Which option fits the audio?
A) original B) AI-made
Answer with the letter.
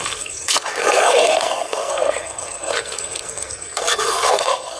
B